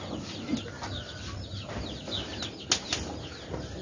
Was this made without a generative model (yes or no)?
yes